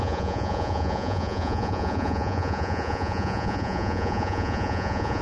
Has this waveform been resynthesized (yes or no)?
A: yes